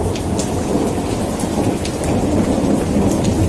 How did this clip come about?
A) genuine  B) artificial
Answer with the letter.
A